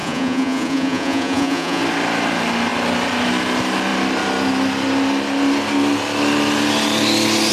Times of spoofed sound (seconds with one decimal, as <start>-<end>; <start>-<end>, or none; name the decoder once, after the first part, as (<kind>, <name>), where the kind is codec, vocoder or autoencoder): 0.0-1.8 (vocoder, Vocos)